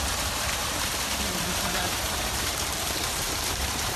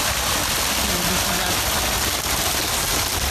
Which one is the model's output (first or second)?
first